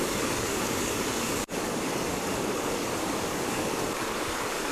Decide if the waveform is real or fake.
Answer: fake